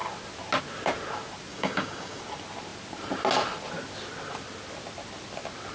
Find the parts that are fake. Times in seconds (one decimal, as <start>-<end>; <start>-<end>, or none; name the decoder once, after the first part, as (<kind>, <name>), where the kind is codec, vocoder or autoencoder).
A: 1.5-2.2 (codec, DAC)